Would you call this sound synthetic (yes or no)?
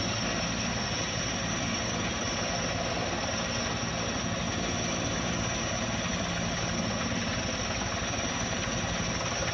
no